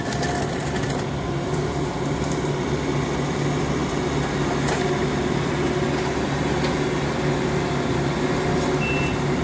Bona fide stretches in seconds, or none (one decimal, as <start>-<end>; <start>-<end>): 0.0-9.4